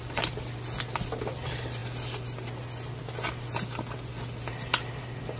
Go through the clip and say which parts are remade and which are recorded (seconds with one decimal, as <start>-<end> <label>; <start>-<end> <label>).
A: 0.0-5.4 recorded